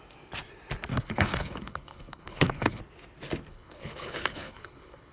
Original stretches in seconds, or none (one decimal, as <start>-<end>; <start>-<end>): 0.0-0.9; 2.8-3.5